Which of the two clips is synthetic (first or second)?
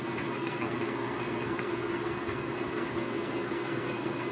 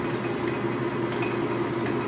first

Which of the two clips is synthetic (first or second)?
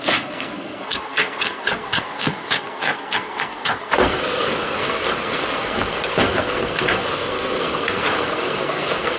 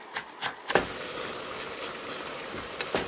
first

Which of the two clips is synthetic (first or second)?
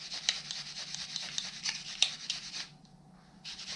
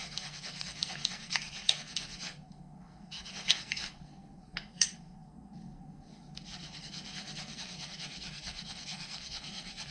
second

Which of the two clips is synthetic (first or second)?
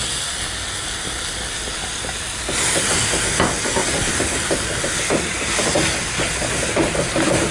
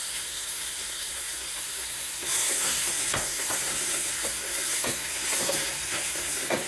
second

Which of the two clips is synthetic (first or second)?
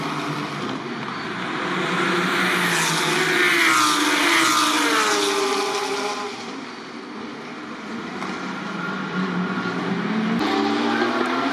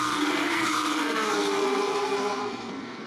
second